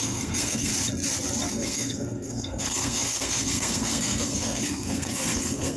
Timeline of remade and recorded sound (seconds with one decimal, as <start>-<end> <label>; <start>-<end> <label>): 0.0-0.7 remade; 0.7-1.5 recorded; 1.5-5.8 remade